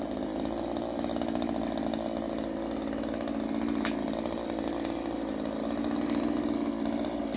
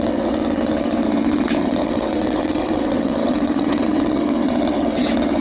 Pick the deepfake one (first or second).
second